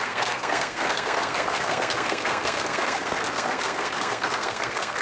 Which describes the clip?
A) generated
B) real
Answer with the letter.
A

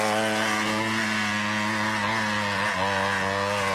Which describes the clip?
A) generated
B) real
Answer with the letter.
B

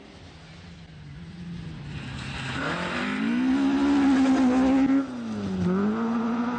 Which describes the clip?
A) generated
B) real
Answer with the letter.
B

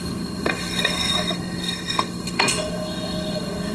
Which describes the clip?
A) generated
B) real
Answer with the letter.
A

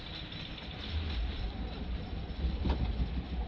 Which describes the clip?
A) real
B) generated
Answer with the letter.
A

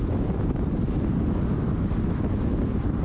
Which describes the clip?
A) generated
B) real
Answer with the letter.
B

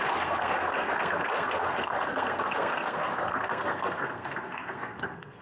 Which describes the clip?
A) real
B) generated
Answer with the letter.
B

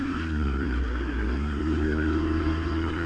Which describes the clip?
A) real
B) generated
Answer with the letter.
B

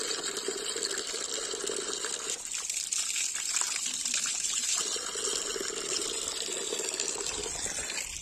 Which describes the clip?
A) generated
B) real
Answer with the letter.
B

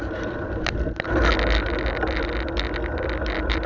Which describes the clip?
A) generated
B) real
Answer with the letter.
B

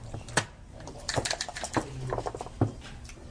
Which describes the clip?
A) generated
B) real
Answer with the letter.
B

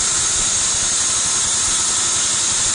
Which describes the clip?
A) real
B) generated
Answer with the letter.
A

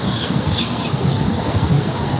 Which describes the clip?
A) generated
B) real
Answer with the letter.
A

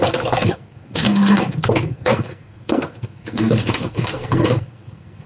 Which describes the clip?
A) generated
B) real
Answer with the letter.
A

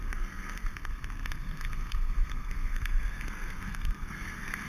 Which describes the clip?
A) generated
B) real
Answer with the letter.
A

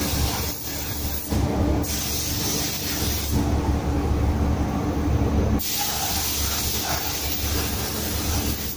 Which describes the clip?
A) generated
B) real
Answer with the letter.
B